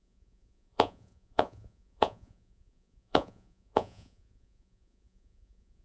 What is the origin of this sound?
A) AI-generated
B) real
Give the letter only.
A